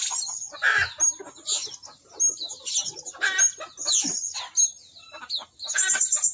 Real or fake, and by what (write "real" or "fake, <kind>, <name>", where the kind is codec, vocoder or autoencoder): real